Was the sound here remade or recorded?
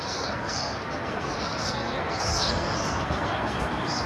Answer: remade